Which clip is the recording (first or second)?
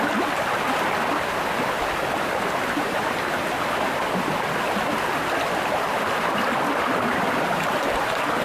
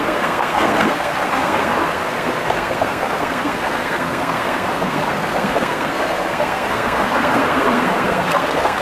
first